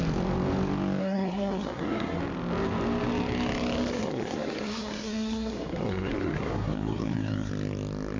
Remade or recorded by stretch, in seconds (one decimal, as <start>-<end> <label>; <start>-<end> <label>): 0.0-1.0 recorded; 1.0-2.2 remade; 2.2-3.9 recorded; 3.9-7.5 remade; 7.5-8.2 recorded